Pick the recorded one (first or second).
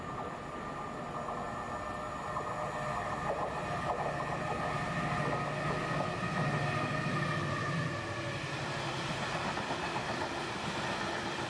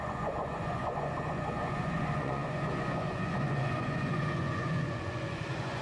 first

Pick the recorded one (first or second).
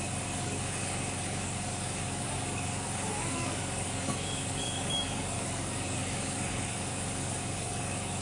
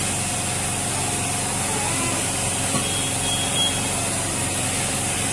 second